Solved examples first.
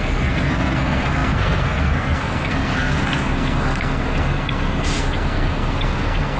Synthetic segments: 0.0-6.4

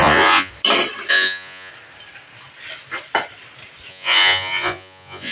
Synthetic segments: 0.0-0.5; 1.1-1.7; 3.9-5.3